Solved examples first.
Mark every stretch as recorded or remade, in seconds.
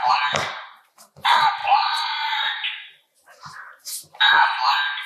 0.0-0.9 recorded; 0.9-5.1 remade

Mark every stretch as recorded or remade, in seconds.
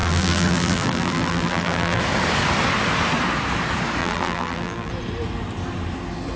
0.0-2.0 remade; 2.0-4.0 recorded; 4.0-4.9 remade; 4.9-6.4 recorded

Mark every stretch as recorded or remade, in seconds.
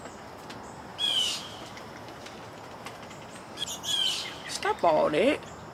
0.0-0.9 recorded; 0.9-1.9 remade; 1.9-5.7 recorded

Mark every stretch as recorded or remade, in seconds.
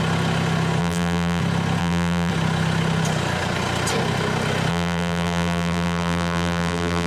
0.0-0.8 recorded; 0.8-1.4 remade; 1.4-1.8 recorded; 1.8-2.3 remade; 2.3-4.7 recorded; 4.7-7.1 remade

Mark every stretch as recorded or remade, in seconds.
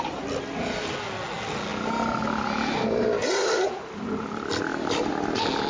0.0-5.7 recorded